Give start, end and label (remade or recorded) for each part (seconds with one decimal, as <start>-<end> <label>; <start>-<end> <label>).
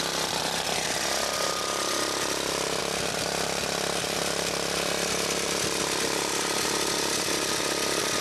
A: 0.0-8.2 remade